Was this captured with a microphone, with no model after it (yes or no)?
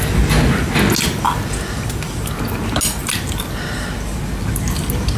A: yes